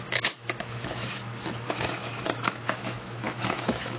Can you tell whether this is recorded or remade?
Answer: remade